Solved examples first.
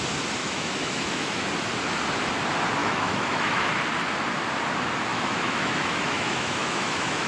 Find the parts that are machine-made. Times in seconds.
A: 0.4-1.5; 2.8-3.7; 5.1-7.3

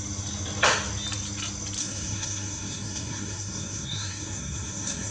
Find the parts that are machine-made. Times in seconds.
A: 1.8-5.1

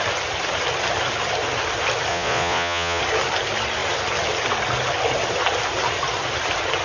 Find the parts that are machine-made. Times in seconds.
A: 2.1-3.0

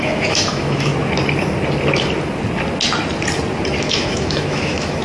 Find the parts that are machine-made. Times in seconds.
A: 0.0-0.9; 3.8-5.0

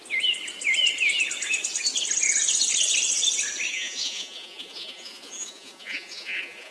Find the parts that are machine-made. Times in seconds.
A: 3.7-6.7